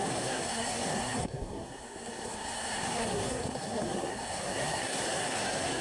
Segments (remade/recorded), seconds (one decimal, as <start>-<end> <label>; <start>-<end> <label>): 0.0-5.8 remade